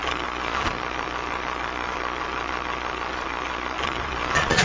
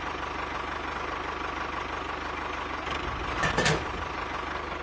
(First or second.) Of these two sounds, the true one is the second